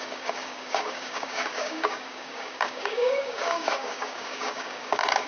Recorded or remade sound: remade